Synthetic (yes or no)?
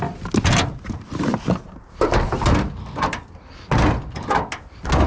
no